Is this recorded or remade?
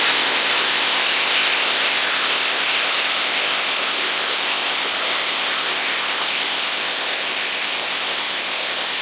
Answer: remade